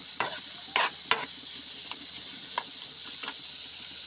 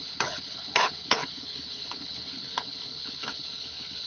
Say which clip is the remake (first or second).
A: second